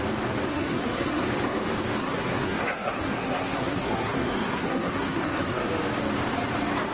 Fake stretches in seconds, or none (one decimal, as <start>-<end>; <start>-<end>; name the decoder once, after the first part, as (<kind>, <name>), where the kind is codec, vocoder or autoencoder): 0.5-1.2 (codec, SNAC); 2.0-5.7